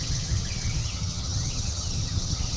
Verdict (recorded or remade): remade